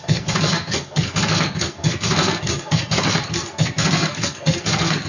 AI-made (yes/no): yes